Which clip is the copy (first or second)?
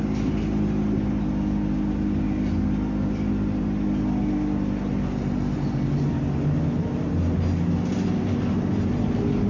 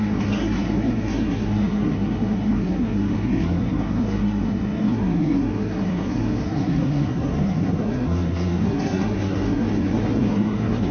second